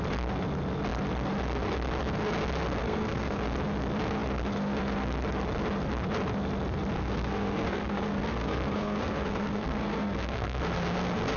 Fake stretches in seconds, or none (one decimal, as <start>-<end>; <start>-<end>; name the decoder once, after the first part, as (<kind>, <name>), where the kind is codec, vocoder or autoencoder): 2.8-3.4 (codec, SNAC); 7.0-10.6